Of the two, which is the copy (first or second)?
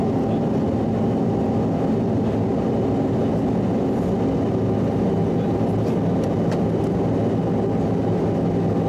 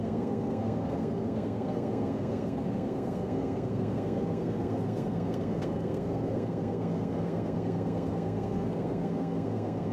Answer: second